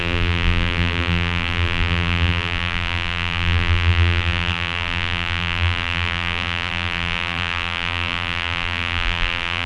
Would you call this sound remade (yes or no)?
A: yes